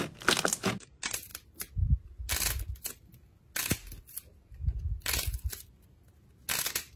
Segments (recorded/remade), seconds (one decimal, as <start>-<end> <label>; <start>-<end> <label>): 0.0-7.0 recorded